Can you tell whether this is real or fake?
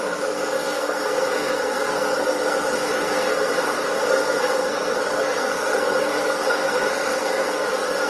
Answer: fake